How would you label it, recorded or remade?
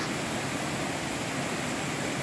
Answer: recorded